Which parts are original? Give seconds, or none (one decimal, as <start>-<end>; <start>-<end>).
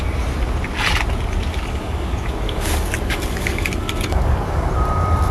0.0-1.5; 4.7-5.3